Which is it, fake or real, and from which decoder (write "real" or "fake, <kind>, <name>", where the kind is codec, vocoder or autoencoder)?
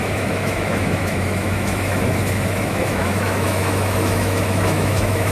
fake, autoencoder, DAC-VAE